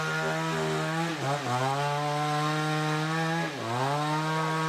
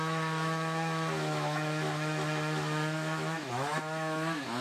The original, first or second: first